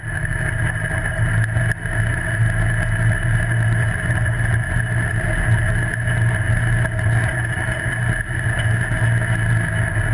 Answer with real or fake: real